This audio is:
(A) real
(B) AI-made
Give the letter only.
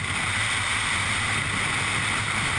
A